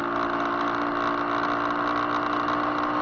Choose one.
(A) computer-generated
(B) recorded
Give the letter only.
B